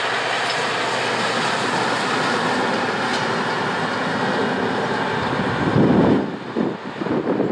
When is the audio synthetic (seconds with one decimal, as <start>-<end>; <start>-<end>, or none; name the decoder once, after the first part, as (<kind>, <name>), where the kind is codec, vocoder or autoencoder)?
none